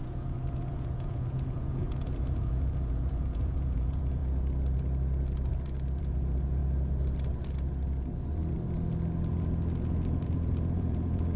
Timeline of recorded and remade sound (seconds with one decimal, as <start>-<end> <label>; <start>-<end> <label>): 0.0-4.2 remade; 4.2-6.0 recorded; 6.0-6.6 remade; 6.6-9.8 recorded; 9.8-11.4 remade